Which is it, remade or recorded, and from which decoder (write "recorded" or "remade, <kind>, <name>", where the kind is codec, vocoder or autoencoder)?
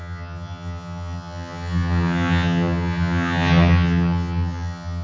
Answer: remade, vocoder, HiFi-GAN